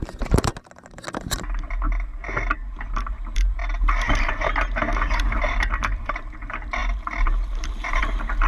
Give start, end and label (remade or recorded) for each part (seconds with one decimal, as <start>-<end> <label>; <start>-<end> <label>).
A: 0.0-0.5 remade; 0.5-3.1 recorded; 3.1-3.6 remade; 3.6-5.1 recorded; 5.1-8.5 remade